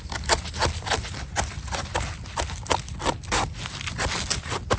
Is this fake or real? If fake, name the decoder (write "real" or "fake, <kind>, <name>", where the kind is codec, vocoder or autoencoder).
real